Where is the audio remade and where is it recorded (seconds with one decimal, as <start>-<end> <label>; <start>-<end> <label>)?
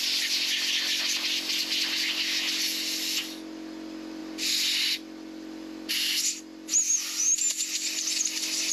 0.0-8.7 recorded